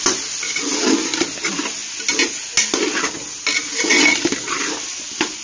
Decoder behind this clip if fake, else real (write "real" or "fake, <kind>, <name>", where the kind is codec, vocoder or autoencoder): real